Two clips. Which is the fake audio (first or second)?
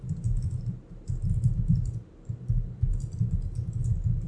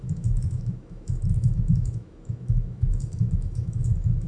second